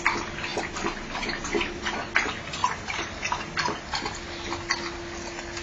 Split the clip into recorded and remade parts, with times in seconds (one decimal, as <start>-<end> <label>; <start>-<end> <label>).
0.0-2.6 recorded; 2.6-3.2 remade; 3.2-5.6 recorded